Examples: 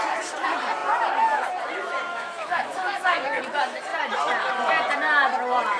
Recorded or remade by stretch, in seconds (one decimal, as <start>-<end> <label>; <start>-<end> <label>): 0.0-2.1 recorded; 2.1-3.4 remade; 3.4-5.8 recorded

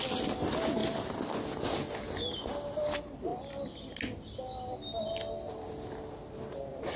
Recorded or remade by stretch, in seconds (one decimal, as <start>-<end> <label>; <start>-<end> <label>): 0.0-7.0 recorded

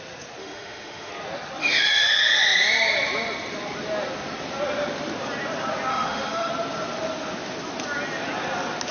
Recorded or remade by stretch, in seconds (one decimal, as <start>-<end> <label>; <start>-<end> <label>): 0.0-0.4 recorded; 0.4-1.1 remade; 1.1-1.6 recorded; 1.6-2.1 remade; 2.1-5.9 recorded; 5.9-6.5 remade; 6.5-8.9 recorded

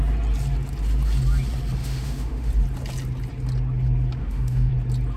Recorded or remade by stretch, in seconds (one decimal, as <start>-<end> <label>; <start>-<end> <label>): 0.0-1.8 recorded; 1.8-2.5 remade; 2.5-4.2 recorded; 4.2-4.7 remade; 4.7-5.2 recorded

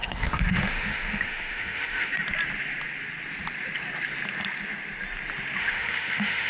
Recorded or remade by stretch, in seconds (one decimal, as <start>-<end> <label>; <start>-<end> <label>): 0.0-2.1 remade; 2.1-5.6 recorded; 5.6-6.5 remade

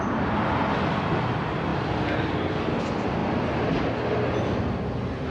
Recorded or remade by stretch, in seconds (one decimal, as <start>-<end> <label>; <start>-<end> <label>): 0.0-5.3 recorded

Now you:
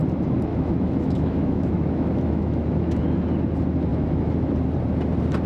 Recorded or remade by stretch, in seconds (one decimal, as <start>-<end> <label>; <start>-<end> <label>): 0.0-0.5 recorded; 0.5-3.0 remade; 3.0-3.9 recorded; 3.9-4.5 remade; 4.5-5.5 recorded